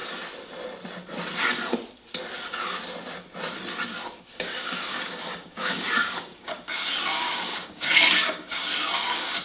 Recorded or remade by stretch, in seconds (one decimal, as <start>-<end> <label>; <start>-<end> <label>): 0.0-4.2 recorded; 4.2-9.4 remade